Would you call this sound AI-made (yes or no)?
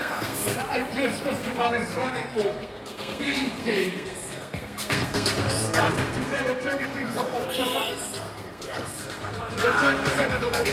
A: yes